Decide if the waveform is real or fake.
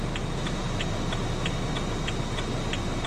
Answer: real